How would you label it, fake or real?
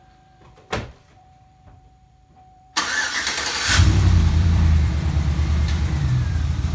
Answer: fake